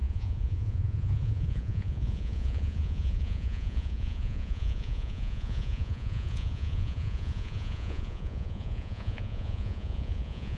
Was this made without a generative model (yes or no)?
no